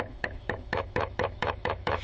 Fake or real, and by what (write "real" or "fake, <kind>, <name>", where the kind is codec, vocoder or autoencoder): fake, autoencoder, DAC-VAE